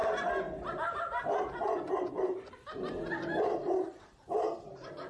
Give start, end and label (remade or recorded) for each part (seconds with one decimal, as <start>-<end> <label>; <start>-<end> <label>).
0.0-3.1 recorded; 3.1-5.1 remade

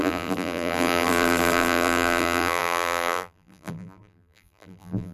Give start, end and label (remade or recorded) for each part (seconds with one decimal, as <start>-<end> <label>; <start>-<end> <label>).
0.0-5.1 remade

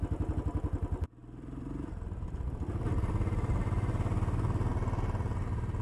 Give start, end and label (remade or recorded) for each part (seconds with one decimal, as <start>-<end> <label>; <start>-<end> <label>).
0.0-1.2 recorded; 1.2-4.7 remade; 4.7-5.8 recorded

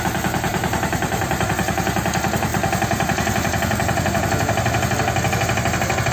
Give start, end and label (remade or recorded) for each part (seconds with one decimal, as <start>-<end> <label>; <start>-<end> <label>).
0.0-0.5 recorded; 0.5-1.5 remade; 1.5-6.1 recorded

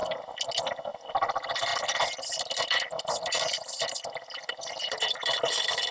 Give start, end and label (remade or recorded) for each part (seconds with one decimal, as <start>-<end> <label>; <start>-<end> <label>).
0.0-1.7 recorded; 1.7-5.2 remade; 5.2-5.9 recorded

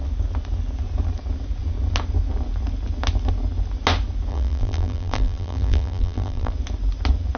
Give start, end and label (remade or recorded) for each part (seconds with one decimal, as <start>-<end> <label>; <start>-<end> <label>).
0.0-4.3 recorded; 4.3-6.5 remade; 6.5-7.4 recorded